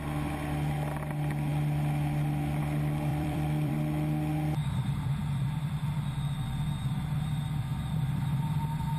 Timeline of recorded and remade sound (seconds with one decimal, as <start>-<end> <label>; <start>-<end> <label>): 0.0-3.1 recorded; 3.1-3.7 remade; 3.7-4.6 recorded; 4.6-6.4 remade; 6.4-9.0 recorded